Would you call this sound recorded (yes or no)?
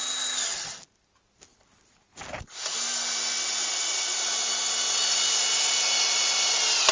yes